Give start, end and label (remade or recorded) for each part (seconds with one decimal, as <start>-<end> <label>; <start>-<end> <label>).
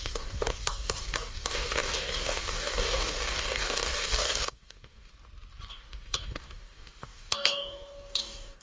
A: 0.0-5.1 remade; 5.1-5.7 recorded; 5.7-8.6 remade